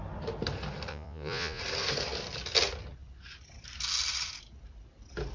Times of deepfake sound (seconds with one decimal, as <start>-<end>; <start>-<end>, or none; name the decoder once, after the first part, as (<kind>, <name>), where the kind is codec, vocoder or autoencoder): 0.9-1.6 (vocoder, Vocos)